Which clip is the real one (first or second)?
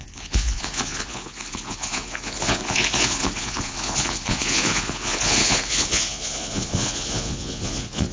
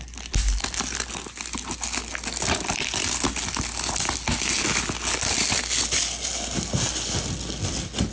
second